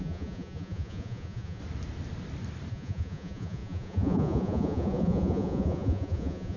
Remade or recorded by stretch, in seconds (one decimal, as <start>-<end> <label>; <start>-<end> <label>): 0.0-1.6 remade; 1.6-2.7 recorded; 2.7-6.6 remade